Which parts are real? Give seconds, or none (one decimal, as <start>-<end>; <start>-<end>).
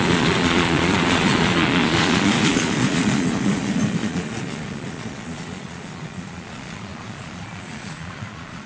none